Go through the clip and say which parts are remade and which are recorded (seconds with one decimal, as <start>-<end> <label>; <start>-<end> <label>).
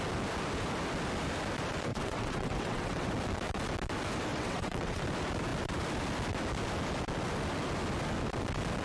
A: 0.0-1.9 recorded; 1.9-3.1 remade; 3.1-4.3 recorded; 4.3-5.0 remade; 5.0-8.8 recorded